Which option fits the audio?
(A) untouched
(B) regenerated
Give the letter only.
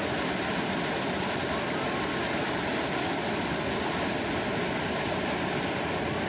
A